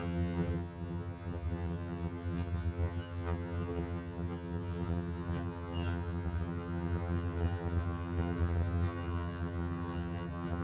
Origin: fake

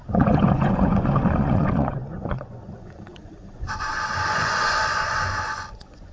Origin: fake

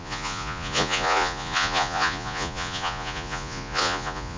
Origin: fake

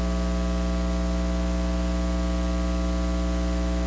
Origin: real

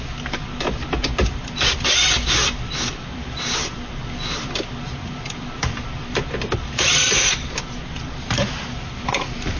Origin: fake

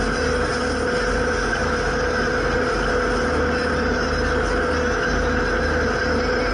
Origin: real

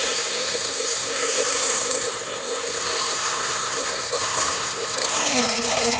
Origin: fake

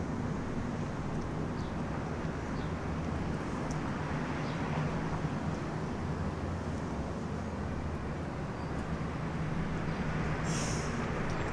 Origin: real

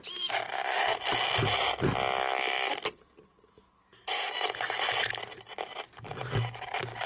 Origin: real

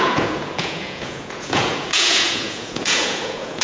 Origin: fake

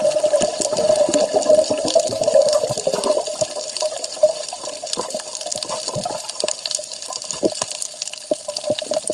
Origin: real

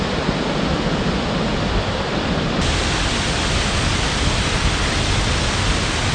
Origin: real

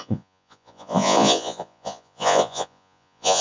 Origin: fake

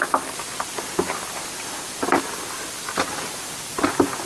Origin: real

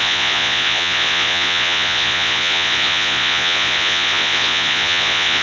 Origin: fake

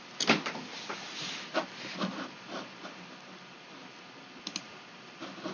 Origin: real